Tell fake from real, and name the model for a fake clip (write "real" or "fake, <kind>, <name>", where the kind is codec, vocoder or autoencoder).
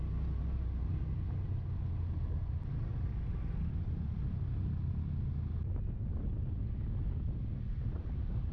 real